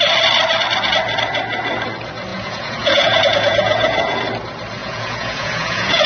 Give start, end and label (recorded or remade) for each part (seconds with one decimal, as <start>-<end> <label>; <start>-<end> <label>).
0.0-2.3 recorded; 2.3-4.2 remade; 4.2-4.8 recorded; 4.8-6.1 remade